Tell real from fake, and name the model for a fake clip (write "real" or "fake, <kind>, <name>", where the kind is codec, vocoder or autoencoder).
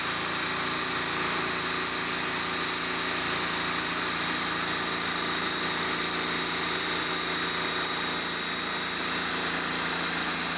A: real